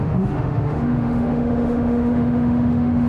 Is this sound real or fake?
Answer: fake